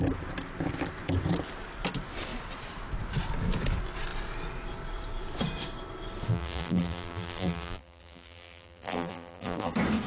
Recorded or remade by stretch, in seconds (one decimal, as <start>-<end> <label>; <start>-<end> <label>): 0.0-6.3 recorded; 6.3-9.7 remade; 9.7-10.1 recorded